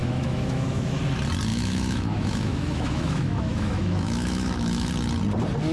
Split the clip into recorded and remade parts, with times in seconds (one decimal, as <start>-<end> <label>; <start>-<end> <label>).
0.0-1.0 remade; 1.0-1.5 recorded; 1.5-4.9 remade; 4.9-5.7 recorded